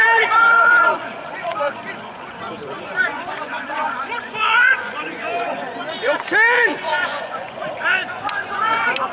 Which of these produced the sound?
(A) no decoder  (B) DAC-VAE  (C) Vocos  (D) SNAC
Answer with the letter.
C